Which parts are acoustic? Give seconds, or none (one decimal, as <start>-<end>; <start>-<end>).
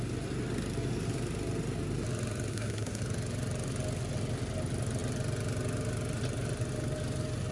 0.0-2.5; 3.0-7.5